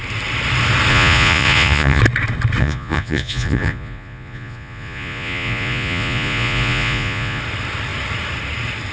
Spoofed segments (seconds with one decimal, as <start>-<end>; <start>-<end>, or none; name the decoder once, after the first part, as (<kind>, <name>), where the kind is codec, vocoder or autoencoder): 0.9-2.0 (vocoder, Vocos); 2.6-7.4